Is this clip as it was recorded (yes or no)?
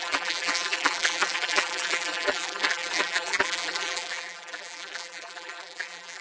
no